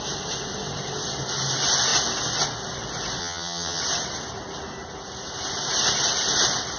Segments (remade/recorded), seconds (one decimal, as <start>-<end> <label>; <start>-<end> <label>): 0.0-3.2 recorded; 3.2-3.8 remade; 3.8-6.8 recorded